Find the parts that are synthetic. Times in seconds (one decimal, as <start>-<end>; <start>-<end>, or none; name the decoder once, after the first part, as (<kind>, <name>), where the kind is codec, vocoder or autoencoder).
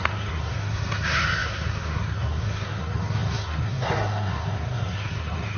0.0-5.6 (codec, SNAC)